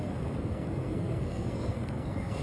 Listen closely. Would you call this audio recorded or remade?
remade